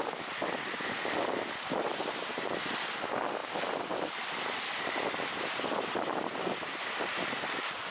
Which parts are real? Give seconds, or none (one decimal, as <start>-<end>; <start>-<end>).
0.0-7.9